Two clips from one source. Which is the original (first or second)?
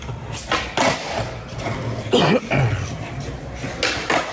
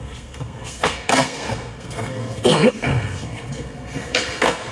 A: first